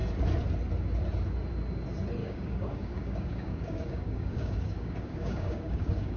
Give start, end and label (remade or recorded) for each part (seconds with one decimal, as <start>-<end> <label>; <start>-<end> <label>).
0.0-2.2 recorded; 2.2-6.2 remade

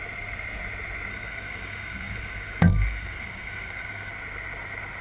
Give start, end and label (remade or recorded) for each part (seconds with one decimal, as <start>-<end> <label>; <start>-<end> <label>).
0.0-1.1 recorded; 1.1-4.1 remade; 4.1-5.0 recorded

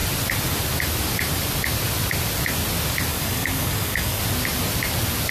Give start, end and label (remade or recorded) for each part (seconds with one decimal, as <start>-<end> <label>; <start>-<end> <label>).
0.0-3.1 recorded; 3.1-4.2 remade; 4.2-5.3 recorded

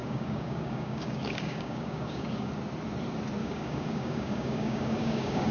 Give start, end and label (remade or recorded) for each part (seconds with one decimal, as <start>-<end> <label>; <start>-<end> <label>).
0.0-2.5 remade; 2.5-3.4 recorded; 3.4-5.5 remade

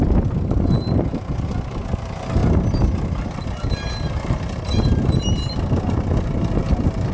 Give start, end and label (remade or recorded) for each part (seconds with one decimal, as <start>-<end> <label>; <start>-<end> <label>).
0.0-7.1 recorded

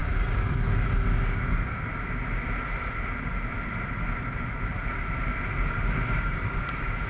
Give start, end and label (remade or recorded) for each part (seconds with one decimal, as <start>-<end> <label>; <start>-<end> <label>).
0.0-1.9 remade; 1.9-6.2 recorded; 6.2-7.1 remade

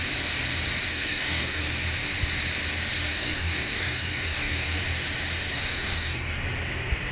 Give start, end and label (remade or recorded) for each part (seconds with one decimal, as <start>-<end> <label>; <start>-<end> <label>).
0.0-0.9 recorded; 0.9-1.6 remade; 1.6-3.1 recorded; 3.1-4.8 remade; 4.8-5.5 recorded; 5.5-6.4 remade; 6.4-7.1 recorded